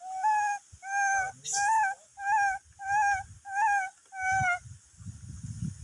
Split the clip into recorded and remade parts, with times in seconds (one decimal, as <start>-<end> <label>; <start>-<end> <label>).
0.0-5.8 recorded